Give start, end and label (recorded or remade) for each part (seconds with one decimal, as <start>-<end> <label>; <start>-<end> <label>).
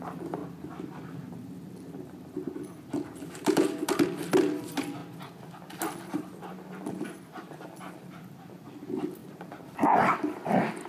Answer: 0.0-0.4 remade; 0.4-1.3 recorded; 1.3-5.0 remade; 5.0-6.1 recorded; 6.1-10.9 remade